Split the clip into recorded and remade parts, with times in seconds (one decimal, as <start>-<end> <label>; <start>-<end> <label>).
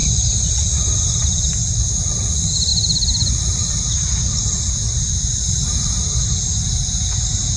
0.0-7.6 recorded